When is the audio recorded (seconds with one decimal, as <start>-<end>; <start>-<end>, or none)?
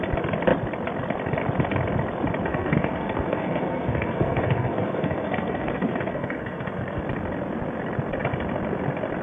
0.0-2.5; 7.0-9.2